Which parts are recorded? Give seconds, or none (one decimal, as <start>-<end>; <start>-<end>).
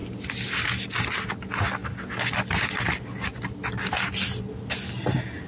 0.0-5.5